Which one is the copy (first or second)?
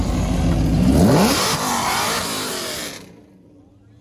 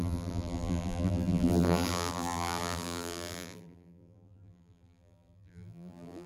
second